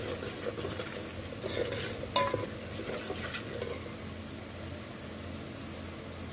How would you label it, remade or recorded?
recorded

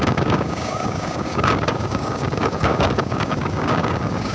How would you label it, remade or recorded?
remade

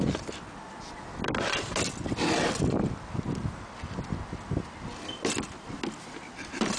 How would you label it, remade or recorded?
recorded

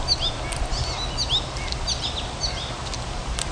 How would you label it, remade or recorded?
recorded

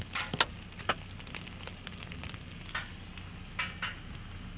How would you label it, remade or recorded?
recorded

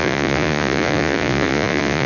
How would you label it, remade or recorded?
remade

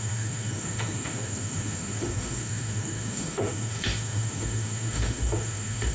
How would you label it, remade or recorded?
remade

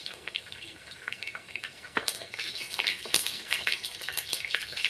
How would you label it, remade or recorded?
remade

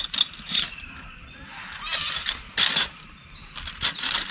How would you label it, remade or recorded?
recorded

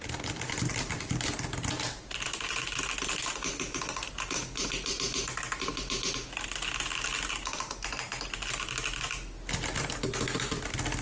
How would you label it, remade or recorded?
recorded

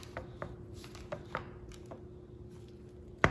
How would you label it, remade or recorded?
recorded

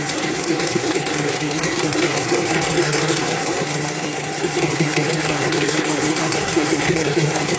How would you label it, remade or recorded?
remade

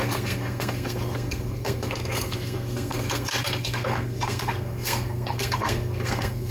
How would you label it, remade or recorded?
remade